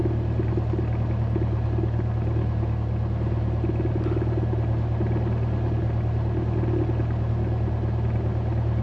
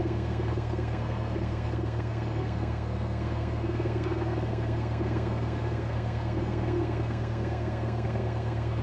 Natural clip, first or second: first